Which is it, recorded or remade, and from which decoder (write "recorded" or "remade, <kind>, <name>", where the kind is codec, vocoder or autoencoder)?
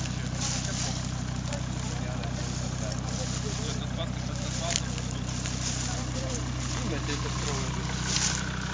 recorded